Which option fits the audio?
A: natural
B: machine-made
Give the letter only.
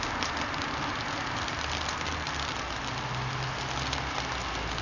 A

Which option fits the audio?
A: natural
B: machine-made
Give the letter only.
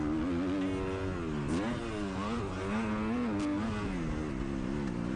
A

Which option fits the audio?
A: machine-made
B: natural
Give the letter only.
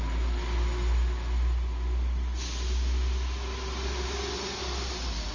B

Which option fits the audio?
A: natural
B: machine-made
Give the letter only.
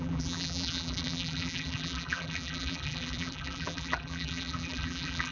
B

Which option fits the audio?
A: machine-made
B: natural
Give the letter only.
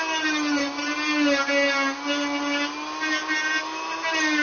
B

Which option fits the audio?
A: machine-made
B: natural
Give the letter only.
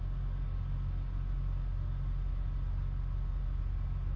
B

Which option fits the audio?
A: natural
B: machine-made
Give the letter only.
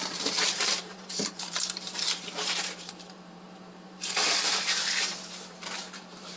B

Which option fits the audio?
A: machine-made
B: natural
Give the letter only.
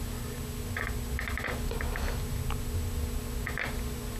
B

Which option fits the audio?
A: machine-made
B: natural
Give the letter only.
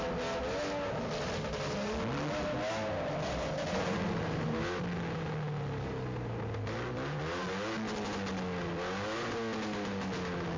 B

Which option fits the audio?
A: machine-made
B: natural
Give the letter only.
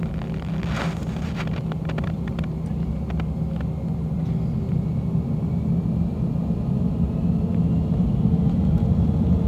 B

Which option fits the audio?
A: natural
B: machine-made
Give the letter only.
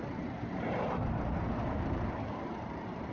B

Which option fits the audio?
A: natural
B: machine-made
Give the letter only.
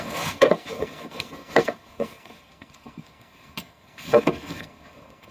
B